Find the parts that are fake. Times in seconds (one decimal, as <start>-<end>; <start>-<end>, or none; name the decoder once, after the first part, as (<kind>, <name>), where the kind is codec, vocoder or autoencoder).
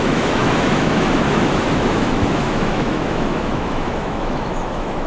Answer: 0.0-5.1 (autoencoder, DAC-VAE)